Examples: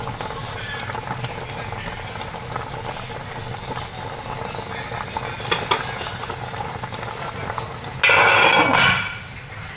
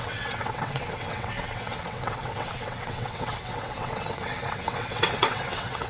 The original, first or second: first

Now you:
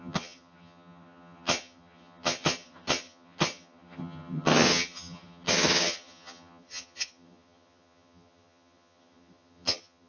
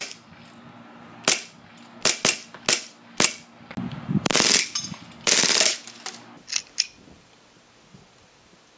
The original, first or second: second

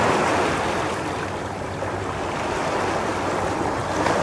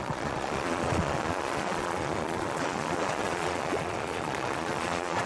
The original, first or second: first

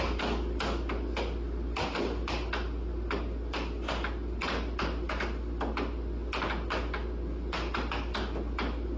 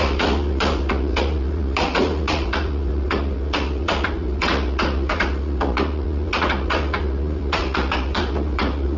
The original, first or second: first